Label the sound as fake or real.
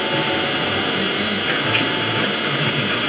real